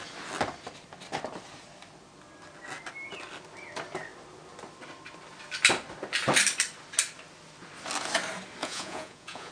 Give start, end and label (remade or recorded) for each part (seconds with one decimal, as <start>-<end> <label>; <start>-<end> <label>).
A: 0.0-8.6 recorded; 8.6-9.5 remade